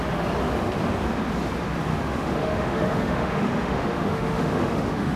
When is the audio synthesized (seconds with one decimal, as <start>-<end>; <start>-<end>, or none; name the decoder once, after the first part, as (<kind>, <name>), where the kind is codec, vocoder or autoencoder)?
1.9-5.2 (autoencoder, DAC-VAE)